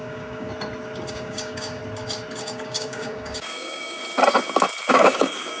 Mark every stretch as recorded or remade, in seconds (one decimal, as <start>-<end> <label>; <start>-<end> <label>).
0.0-0.5 remade; 0.5-1.1 recorded; 1.1-1.8 remade; 1.8-2.4 recorded; 2.4-4.0 remade; 4.0-4.9 recorded; 4.9-5.6 remade